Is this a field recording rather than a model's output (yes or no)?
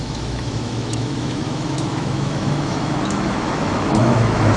no